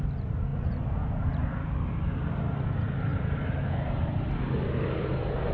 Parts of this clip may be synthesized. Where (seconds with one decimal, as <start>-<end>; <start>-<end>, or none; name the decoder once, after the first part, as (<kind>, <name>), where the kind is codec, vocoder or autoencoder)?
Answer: 3.1-4.3 (vocoder, BigVGAN v2)